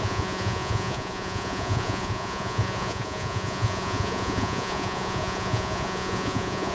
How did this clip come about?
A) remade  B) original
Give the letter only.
A